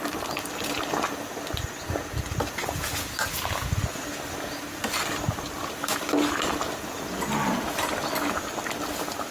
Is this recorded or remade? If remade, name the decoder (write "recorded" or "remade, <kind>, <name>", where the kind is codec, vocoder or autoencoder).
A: recorded